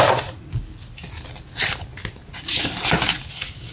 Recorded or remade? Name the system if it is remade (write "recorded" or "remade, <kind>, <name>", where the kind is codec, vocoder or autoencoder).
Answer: recorded